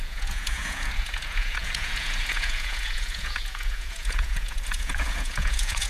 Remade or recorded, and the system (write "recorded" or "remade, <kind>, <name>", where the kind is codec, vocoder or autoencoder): remade, vocoder, Vocos